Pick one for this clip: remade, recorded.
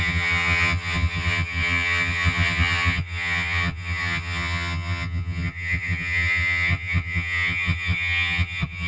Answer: remade